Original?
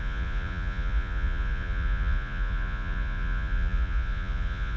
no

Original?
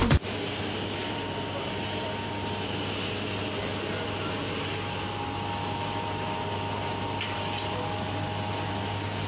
yes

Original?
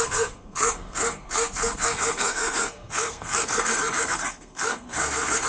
no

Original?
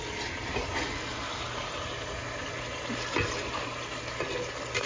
yes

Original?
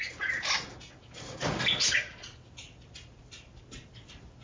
yes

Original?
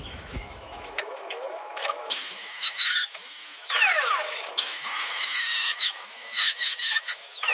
no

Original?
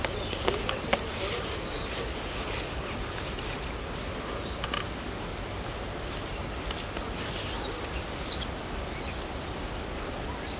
yes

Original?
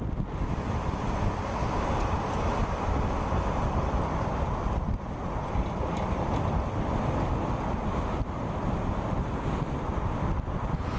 yes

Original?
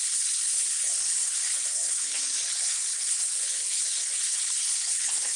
no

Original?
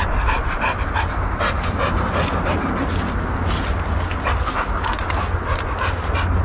yes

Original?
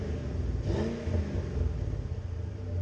yes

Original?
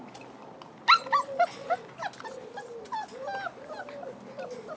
yes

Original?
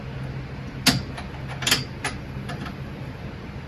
yes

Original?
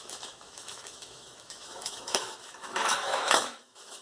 no